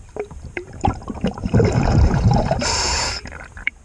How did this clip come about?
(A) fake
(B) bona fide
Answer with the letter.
A